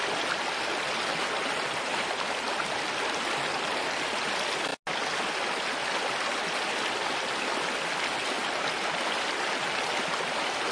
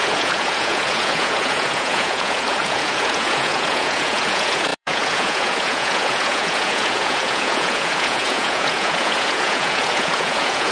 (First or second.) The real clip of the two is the first